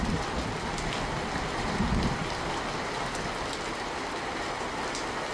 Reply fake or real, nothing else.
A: real